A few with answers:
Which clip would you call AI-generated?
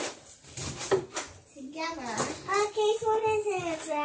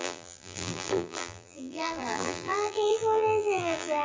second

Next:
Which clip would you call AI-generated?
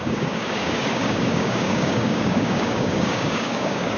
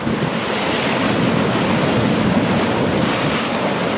first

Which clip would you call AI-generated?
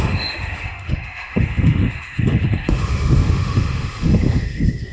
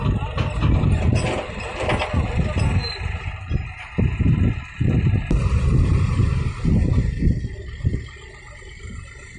first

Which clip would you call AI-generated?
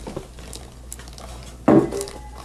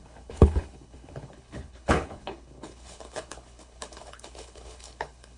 second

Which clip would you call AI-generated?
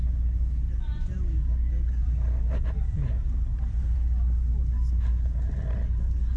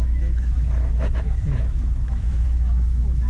second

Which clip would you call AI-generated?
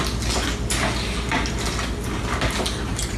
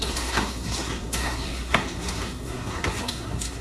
second